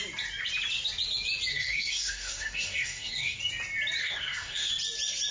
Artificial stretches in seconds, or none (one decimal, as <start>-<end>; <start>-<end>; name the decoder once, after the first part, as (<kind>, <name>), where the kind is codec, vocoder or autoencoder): 1.5-3.4 (codec, SNAC); 4.0-4.7